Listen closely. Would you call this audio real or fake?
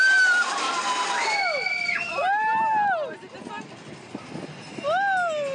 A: real